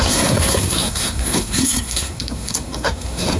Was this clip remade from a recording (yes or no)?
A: yes